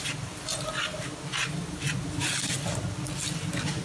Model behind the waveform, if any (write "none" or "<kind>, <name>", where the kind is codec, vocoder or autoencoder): none